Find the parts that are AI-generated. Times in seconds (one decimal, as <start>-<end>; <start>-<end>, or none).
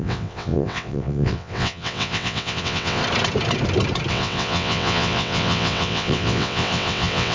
0.0-3.0; 4.1-7.3